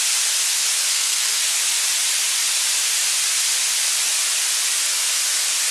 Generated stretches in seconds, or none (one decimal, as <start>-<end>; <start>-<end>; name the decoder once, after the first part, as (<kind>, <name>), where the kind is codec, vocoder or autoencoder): 0.9-1.4 (codec, SNAC)